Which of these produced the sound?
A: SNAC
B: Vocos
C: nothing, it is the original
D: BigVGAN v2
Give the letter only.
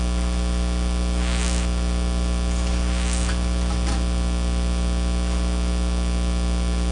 C